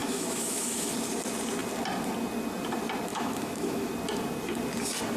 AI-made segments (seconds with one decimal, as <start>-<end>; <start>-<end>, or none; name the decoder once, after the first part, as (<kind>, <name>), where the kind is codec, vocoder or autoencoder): 0.0-0.9 (autoencoder, DAC-VAE); 3.1-3.9